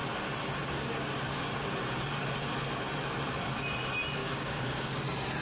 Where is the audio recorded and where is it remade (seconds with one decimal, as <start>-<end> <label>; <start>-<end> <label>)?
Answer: 0.0-4.2 recorded; 4.2-5.0 remade; 5.0-5.4 recorded